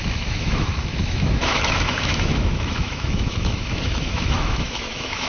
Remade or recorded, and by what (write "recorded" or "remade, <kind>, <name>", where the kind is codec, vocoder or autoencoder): remade, autoencoder, DAC-VAE